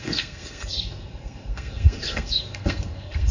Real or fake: fake